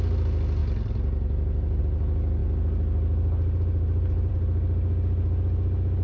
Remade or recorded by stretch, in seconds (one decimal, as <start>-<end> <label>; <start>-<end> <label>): 0.0-6.0 recorded